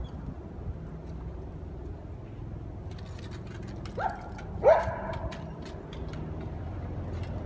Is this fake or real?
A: real